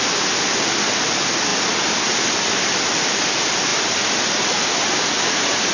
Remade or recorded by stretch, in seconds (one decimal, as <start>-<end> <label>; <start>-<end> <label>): 0.0-5.7 recorded